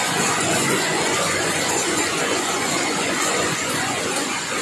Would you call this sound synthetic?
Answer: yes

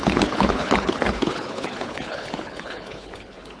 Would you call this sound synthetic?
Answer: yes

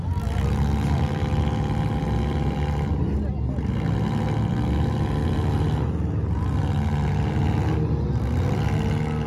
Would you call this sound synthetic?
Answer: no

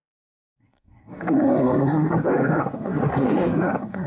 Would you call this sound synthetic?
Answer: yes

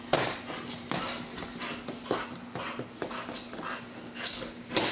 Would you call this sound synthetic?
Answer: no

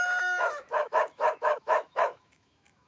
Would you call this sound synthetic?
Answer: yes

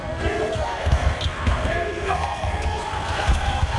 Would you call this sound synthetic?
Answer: yes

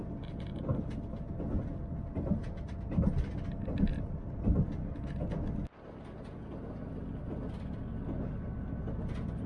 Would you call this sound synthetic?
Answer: no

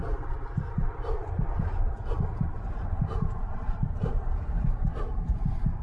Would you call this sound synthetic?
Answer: yes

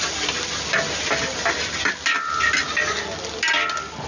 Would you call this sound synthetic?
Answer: no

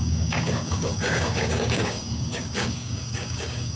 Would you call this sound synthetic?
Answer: yes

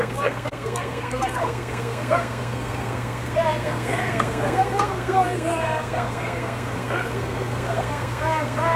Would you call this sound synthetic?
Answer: yes